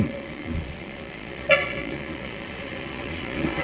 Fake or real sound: fake